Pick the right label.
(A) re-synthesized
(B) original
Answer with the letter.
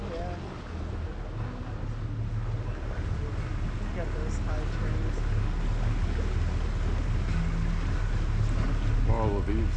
B